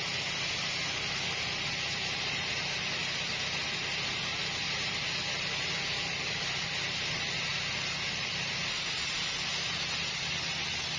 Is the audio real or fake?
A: real